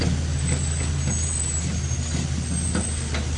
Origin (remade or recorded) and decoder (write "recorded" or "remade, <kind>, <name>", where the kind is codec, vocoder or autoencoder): recorded